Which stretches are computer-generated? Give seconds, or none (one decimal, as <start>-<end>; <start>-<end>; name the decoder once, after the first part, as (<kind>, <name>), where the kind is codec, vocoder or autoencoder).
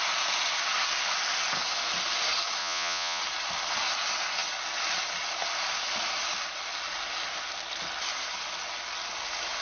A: 2.6-3.2 (vocoder, Vocos)